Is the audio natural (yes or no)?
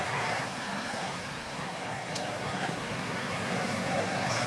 no